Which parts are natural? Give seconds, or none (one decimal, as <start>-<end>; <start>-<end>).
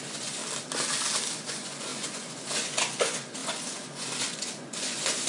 0.4-1.3